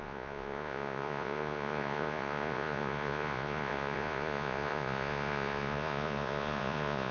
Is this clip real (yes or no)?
no